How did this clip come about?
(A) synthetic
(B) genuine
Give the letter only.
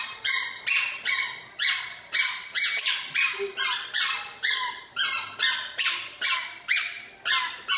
B